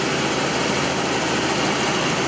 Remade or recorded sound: recorded